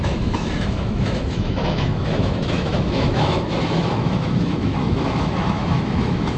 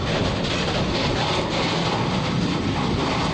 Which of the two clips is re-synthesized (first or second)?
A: first